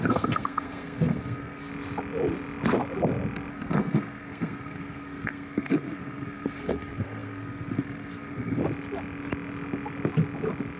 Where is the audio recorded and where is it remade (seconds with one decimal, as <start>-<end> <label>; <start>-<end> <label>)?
0.0-1.7 remade; 1.7-3.5 recorded; 3.5-8.6 remade; 8.6-10.8 recorded